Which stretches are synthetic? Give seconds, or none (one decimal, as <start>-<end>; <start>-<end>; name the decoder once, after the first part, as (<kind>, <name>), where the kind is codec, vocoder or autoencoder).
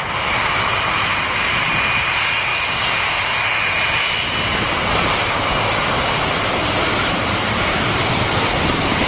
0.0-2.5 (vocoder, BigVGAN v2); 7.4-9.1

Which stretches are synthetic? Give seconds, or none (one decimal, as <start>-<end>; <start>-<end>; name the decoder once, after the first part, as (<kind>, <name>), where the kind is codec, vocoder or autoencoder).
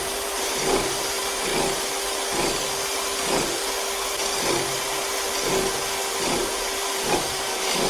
0.0-1.5 (vocoder, BigVGAN v2); 6.2-7.9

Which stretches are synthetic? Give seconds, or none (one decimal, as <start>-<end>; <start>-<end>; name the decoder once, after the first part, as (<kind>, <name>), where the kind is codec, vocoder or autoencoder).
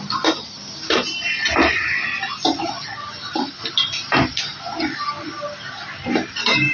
none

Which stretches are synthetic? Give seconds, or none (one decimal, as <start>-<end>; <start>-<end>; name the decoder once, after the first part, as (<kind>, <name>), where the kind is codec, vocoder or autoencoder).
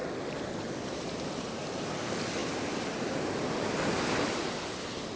2.4-4.6 (vocoder, BigVGAN v2)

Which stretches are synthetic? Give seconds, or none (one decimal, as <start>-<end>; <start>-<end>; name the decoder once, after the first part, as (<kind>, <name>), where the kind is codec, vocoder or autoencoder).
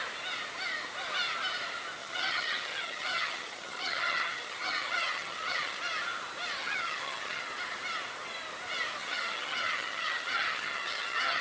2.0-5.8 (vocoder, HiFi-GAN); 6.6-7.4; 9.0-11.4